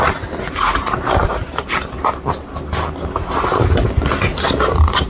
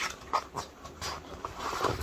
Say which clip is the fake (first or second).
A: second